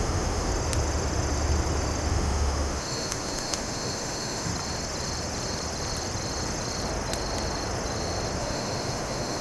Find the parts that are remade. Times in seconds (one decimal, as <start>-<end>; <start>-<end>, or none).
0.0-0.5; 2.1-4.5; 8.4-9.4